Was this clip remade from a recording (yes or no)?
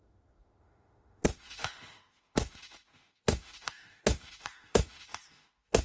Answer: yes